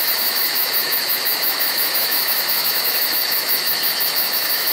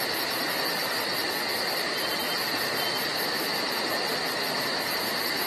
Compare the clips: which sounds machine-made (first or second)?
first